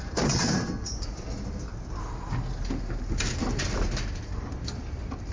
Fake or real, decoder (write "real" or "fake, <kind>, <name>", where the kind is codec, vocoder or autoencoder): real